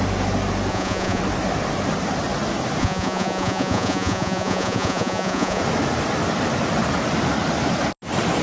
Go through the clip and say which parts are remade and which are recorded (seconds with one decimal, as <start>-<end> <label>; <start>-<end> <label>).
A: 0.0-0.7 recorded; 0.7-1.2 remade; 1.2-2.8 recorded; 2.8-5.6 remade; 5.6-8.4 recorded